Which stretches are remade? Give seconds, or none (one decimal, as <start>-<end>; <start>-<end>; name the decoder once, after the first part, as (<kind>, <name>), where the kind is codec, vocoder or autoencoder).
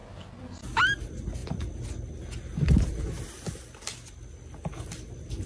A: none